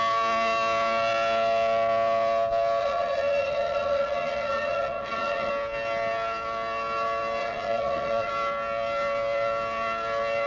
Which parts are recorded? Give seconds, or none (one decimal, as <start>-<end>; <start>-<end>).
0.0-2.8; 5.5-7.4; 8.3-10.5